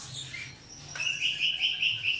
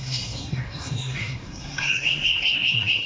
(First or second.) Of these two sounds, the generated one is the second